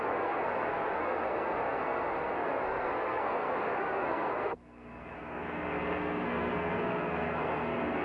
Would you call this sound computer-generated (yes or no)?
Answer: yes